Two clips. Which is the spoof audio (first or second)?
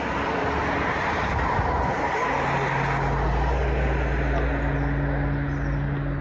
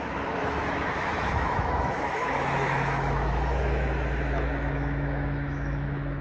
second